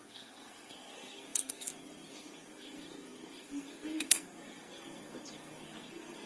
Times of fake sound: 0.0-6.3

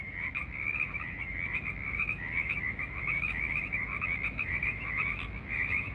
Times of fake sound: 0.0-5.9

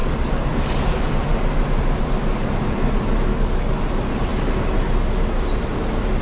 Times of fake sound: 3.3-3.8

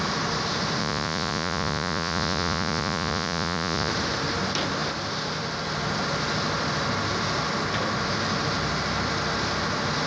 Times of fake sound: 0.8-3.9

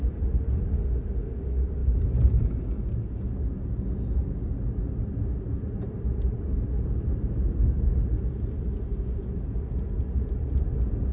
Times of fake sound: none

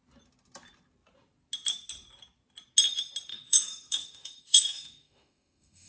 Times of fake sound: 3.3-5.9